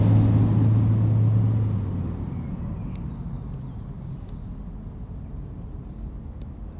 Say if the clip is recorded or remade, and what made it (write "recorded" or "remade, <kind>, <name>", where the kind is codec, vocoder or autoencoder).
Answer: recorded